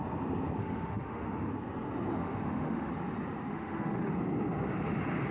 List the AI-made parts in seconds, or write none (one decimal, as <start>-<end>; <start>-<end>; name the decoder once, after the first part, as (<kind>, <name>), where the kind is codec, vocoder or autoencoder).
0.6-1.5 (autoencoder, DAC-VAE); 2.2-2.9; 3.5-4.1